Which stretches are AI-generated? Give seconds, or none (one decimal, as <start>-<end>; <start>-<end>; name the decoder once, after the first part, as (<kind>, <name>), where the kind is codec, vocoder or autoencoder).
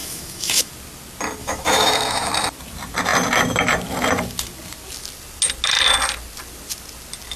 0.0-0.7 (autoencoder, DAC-VAE); 1.4-2.3